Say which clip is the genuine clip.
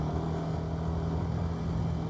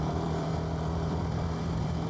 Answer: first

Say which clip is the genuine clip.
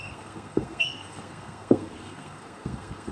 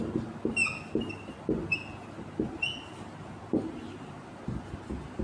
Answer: second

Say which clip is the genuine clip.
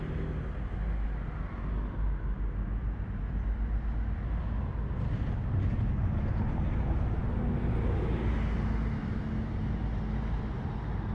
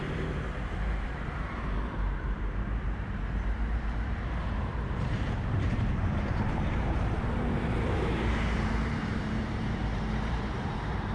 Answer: first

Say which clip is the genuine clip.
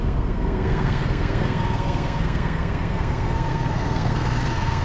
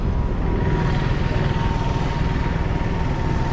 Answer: second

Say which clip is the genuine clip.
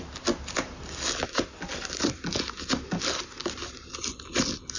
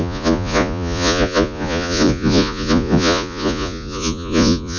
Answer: first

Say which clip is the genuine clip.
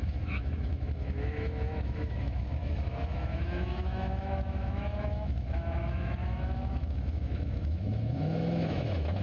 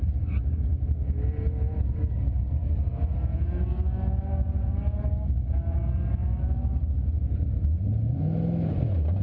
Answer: second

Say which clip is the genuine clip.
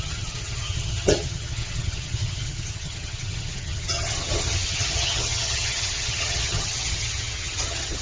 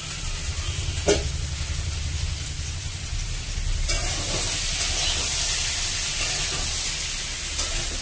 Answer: second